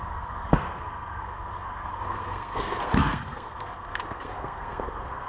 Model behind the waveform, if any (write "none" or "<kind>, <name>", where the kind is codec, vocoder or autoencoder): codec, SNAC